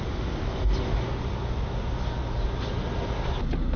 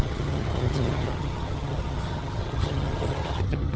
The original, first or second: first